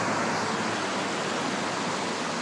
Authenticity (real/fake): real